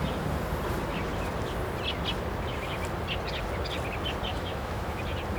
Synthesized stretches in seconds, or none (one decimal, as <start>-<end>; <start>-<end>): 4.3-5.0